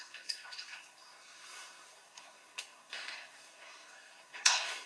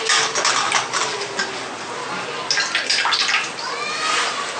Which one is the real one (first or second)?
second